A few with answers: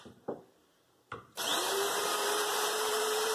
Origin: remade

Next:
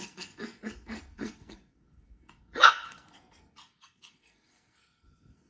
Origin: remade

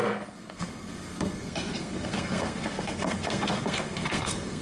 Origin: remade